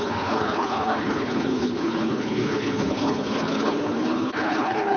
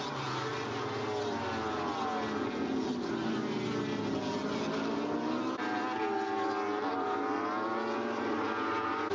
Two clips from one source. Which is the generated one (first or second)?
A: first